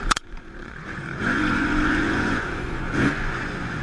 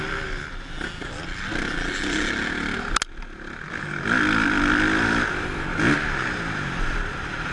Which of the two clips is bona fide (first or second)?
second